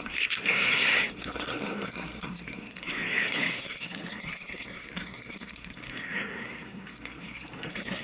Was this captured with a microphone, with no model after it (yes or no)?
no